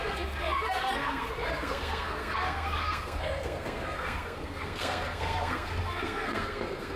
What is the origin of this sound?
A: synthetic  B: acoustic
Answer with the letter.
A